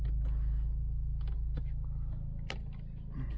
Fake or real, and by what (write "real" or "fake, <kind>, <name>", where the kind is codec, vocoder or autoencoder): real